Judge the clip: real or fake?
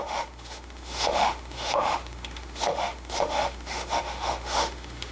fake